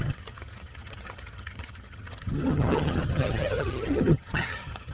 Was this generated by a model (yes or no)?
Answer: yes